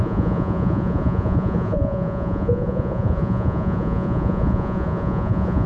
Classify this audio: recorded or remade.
remade